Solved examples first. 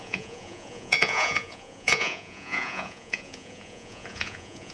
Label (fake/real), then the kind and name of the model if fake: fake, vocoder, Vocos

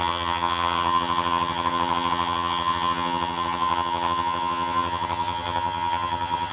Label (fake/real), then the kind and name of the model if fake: fake, vocoder, HiFi-GAN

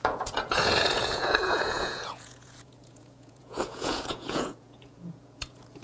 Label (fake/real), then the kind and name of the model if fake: fake, vocoder, Vocos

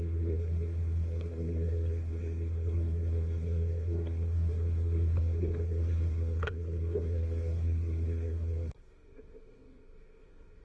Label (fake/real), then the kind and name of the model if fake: fake, codec, SNAC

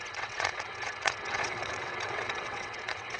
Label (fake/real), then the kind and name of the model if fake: fake, vocoder, WaveNeXt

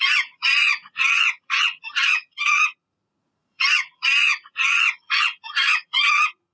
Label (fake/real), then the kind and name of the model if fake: fake, vocoder, Vocos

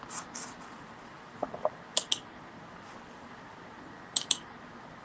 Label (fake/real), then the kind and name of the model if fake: real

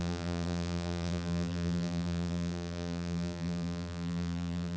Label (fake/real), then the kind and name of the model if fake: fake, vocoder, BigVGAN v2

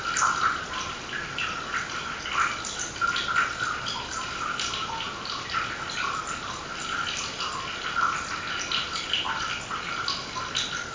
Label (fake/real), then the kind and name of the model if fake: real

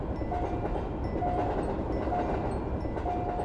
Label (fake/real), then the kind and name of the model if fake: real